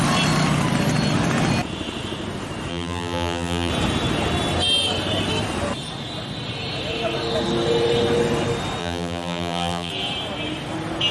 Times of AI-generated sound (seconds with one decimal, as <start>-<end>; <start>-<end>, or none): 2.7-3.7; 8.8-9.9